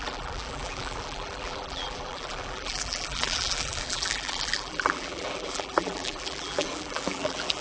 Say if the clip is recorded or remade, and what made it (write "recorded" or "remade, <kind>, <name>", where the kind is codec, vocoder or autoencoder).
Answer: remade, vocoder, BigVGAN v2